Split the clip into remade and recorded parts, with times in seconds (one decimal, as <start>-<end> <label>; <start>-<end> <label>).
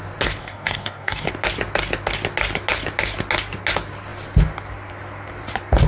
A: 0.0-0.4 recorded; 0.4-1.3 remade; 1.3-5.9 recorded